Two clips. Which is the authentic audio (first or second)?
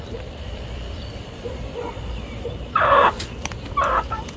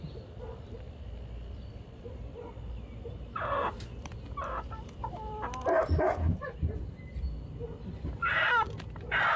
second